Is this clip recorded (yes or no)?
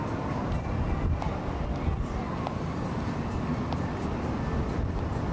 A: yes